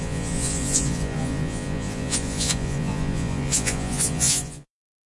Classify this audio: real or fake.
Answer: fake